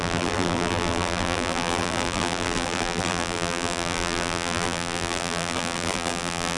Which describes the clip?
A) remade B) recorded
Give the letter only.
A